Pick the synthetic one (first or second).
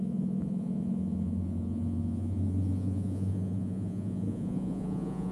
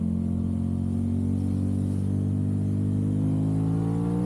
first